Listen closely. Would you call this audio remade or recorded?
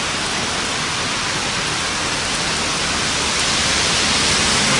recorded